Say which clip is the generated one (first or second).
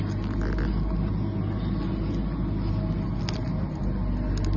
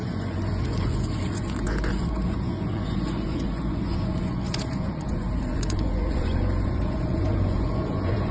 second